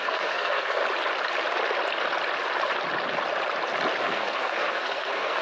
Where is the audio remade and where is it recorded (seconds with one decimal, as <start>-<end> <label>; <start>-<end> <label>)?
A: 0.0-0.8 remade; 0.8-4.0 recorded; 4.0-5.4 remade